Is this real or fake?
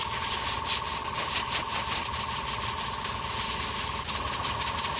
real